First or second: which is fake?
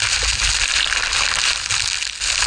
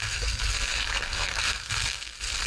second